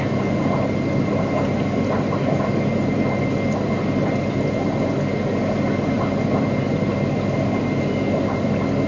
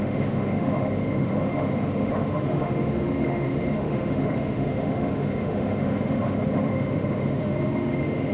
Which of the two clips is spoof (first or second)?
second